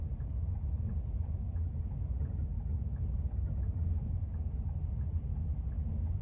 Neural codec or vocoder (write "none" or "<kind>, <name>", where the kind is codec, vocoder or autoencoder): none